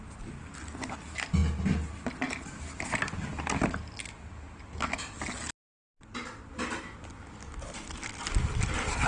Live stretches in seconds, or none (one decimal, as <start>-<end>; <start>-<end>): 0.0-9.1